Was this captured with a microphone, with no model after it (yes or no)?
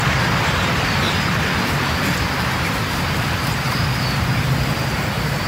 no